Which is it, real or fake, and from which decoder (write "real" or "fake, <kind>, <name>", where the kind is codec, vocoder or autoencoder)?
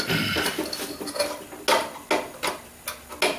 real